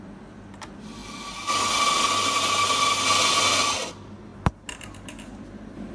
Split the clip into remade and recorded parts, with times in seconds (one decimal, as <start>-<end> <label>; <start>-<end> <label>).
0.0-5.9 recorded